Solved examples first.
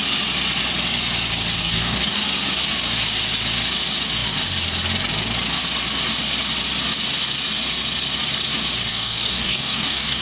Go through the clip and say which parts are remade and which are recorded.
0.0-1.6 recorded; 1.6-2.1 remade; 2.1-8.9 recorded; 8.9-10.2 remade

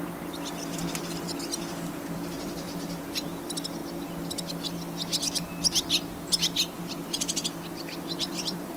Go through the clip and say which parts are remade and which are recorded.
0.0-0.8 remade; 0.8-1.7 recorded; 1.7-3.8 remade; 3.8-8.2 recorded; 8.2-8.8 remade

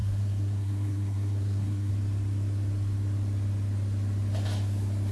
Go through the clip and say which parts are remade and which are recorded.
0.0-1.9 remade; 1.9-5.1 recorded

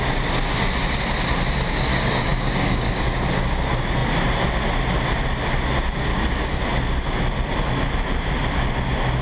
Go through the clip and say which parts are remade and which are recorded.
0.0-1.9 recorded; 1.9-3.2 remade; 3.2-6.1 recorded; 6.1-6.6 remade; 6.6-9.2 recorded